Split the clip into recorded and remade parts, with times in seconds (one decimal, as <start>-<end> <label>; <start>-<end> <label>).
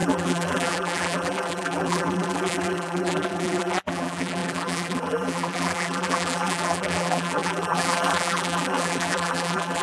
0.0-9.8 remade